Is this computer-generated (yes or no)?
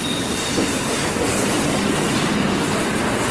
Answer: no